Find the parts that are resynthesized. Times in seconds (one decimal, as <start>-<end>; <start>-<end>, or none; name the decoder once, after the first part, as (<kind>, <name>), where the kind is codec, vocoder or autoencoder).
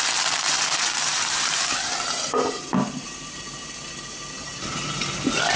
0.0-5.6 (vocoder, BigVGAN v2)